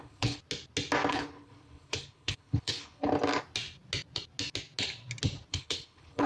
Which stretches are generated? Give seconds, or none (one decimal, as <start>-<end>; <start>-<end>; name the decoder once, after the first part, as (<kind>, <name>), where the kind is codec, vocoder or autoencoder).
0.0-0.4 (codec, HILCodec); 1.1-3.1; 5.5-6.3